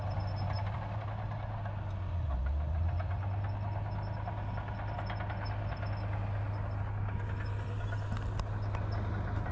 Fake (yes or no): no